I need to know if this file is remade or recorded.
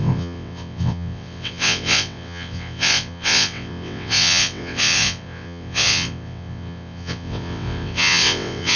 remade